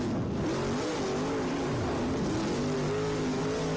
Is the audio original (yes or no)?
yes